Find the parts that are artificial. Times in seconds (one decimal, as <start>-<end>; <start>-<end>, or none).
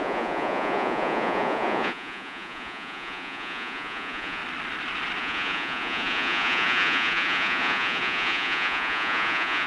0.0-4.4; 5.2-9.7